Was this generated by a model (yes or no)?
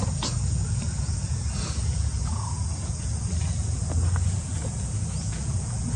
yes